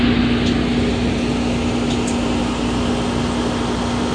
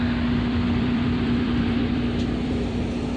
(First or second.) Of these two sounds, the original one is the first